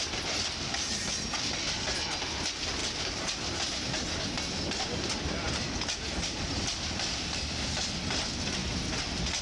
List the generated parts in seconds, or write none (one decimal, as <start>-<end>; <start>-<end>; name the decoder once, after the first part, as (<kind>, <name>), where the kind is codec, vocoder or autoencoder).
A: none